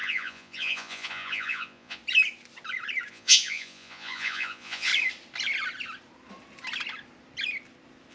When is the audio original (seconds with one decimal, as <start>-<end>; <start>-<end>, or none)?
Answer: 2.0-3.1; 4.9-8.1

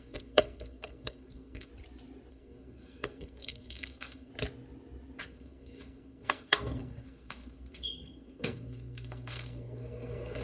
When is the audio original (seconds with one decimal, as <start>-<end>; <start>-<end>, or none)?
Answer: 1.7-2.3; 4.3-5.2

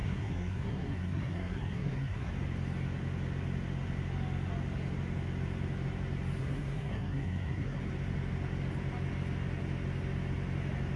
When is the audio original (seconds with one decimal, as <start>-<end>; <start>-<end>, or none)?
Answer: 2.3-6.4; 7.8-11.0

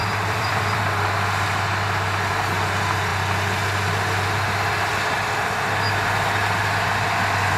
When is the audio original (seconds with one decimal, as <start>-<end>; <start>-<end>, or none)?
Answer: 0.8-7.6